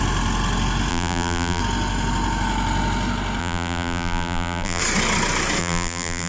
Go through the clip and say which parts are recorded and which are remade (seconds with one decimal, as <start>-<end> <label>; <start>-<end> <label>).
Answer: 0.0-0.9 recorded; 0.9-1.6 remade; 1.6-3.4 recorded; 3.4-4.8 remade; 4.8-5.6 recorded; 5.6-6.3 remade